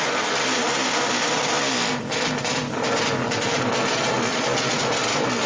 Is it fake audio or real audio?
fake